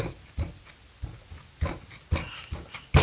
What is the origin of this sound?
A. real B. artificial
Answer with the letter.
A